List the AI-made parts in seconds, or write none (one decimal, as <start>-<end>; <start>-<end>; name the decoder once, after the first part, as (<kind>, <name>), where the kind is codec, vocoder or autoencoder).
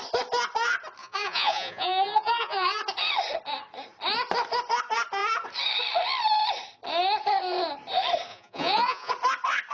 1.0-2.8 (vocoder, Vocos); 8.3-9.1